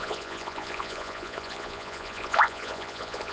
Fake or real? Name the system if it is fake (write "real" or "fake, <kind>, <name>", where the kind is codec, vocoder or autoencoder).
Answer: fake, vocoder, Vocos